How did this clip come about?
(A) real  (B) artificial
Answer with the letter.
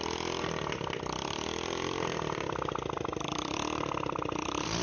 B